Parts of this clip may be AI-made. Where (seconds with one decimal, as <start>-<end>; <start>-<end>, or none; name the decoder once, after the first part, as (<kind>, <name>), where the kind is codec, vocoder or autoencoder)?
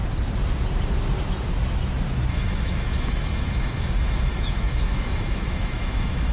2.3-6.3 (autoencoder, DAC-VAE)